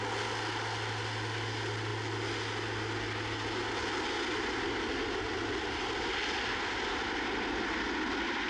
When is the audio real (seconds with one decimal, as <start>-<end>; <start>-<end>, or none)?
0.0-8.5